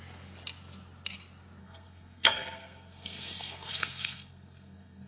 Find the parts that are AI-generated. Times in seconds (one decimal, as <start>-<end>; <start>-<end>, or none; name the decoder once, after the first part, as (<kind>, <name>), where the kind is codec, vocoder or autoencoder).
1.6-5.1 (codec, SNAC)